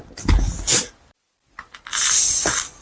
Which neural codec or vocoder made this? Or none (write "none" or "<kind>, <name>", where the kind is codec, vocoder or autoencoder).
none